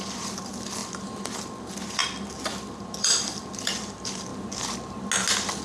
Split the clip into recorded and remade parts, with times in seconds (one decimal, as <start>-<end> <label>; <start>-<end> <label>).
0.0-4.3 remade; 4.3-5.6 recorded